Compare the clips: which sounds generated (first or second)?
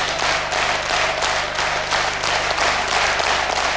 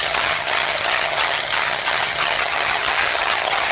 second